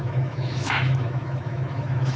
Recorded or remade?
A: remade